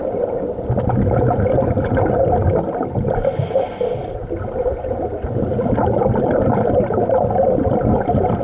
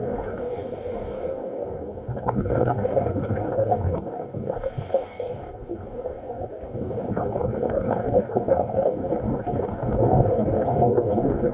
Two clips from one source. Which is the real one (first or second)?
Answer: first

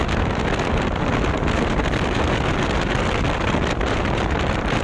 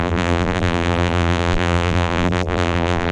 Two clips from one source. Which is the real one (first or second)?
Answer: first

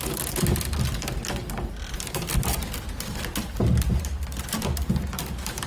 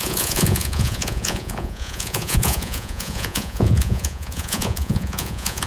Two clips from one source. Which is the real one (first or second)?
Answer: first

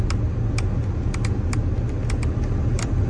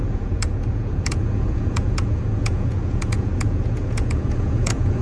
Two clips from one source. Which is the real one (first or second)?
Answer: first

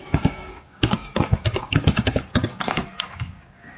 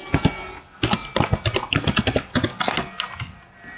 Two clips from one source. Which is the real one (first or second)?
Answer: second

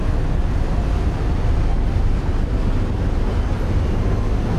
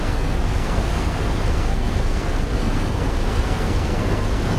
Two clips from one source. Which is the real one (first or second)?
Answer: first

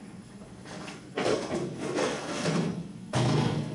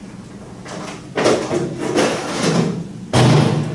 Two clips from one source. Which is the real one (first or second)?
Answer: second